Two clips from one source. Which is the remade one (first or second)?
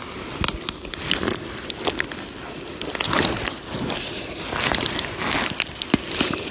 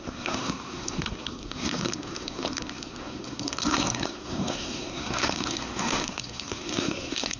second